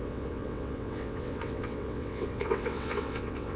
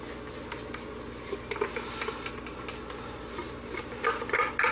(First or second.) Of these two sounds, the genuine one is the second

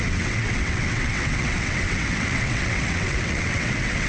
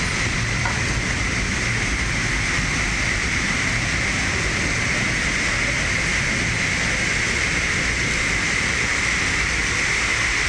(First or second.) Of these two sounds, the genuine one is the second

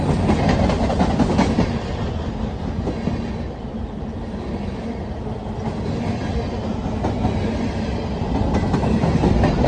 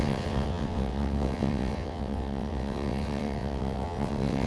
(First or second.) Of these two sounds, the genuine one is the first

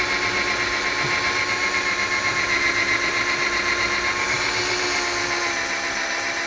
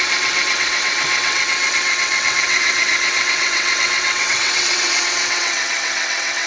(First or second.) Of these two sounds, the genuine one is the first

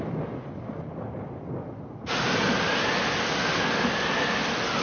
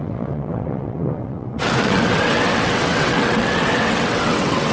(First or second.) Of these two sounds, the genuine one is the first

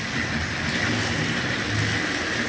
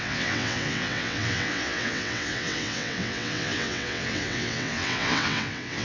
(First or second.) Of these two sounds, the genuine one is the first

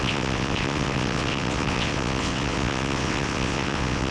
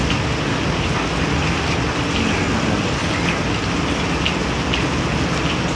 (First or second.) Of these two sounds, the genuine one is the second